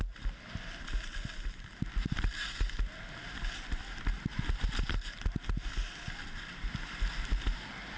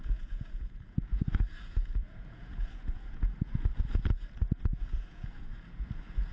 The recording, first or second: first